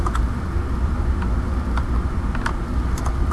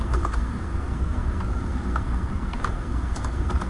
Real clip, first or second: first